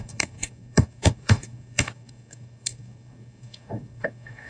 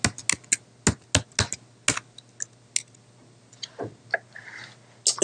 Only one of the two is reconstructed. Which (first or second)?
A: first